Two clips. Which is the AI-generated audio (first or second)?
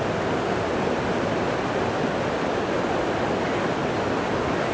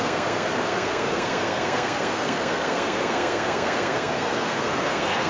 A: second